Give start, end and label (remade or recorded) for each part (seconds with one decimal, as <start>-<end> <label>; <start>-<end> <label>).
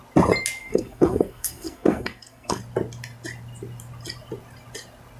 0.0-0.6 recorded; 0.6-2.6 remade; 2.6-5.2 recorded